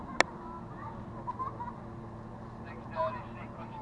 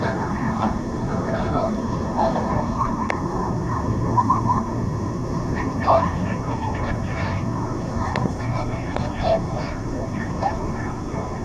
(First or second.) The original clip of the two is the first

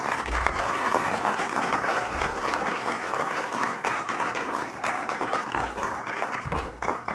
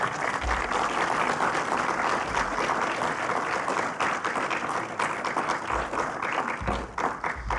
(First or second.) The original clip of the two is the second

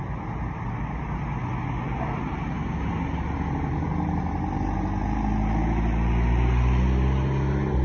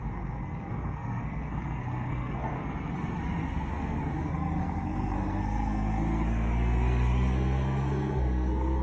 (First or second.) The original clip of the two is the first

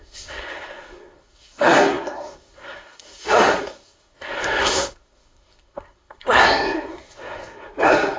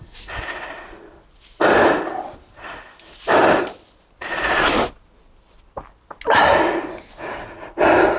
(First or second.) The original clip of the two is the second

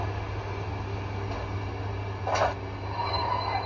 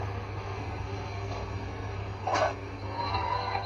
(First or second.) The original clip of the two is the first